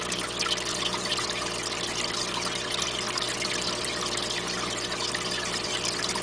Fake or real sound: fake